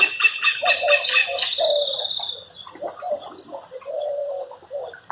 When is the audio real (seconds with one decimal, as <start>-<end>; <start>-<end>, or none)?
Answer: 0.0-5.1